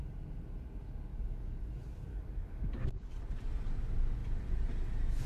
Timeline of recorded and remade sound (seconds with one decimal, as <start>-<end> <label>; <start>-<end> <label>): 0.0-1.1 recorded; 1.1-1.7 remade; 1.7-2.1 recorded; 2.1-3.1 remade; 3.1-5.3 recorded